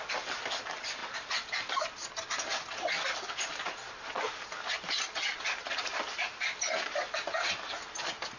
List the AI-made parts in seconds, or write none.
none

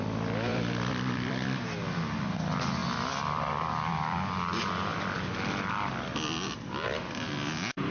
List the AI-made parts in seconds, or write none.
0.5-1.6 (vocoder, BigVGAN v2); 4.9-5.7

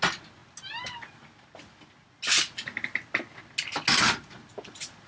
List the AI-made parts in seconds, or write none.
none

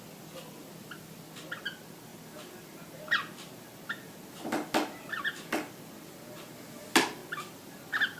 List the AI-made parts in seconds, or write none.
2.1-3.5 (vocoder, BigVGAN v2)

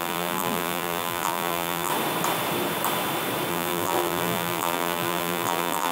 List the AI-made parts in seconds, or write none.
0.0-1.9 (vocoder, BigVGAN v2); 3.5-5.9

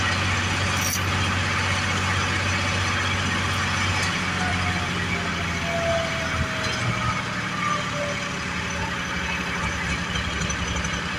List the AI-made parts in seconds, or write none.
none

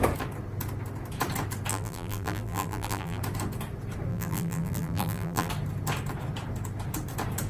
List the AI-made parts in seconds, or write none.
1.7-3.2 (vocoder, BigVGAN v2); 4.1-5.5